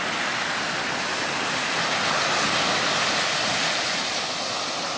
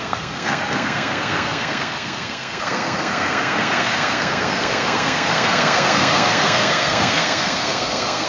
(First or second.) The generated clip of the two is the second